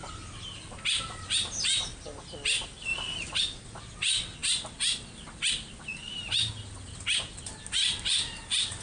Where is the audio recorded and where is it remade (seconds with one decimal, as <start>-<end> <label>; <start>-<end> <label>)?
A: 0.0-8.8 recorded